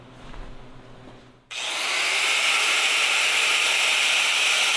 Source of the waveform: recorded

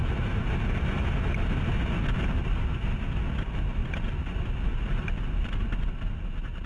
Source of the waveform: recorded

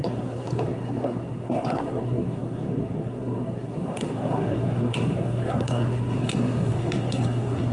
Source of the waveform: remade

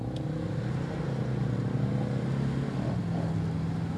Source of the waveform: recorded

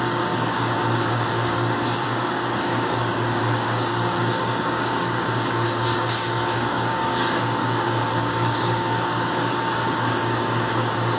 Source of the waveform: remade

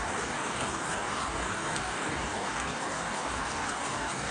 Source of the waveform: remade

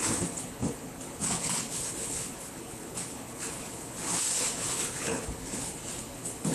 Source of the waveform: remade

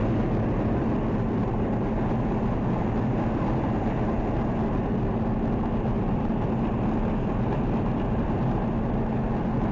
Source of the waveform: recorded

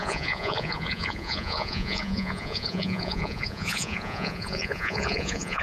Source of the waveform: remade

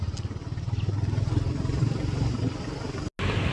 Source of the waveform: recorded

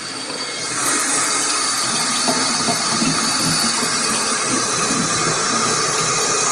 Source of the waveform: recorded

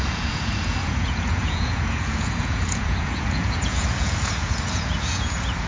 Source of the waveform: remade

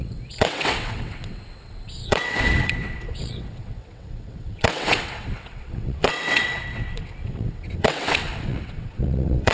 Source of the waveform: remade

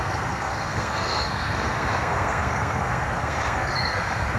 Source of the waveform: remade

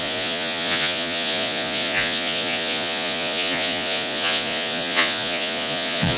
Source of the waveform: remade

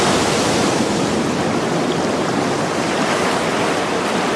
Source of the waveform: recorded